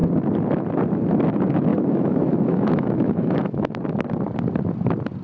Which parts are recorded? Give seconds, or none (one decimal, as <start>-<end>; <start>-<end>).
0.0-1.7; 3.7-5.2